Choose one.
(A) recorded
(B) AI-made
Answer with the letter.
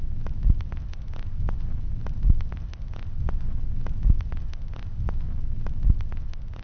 A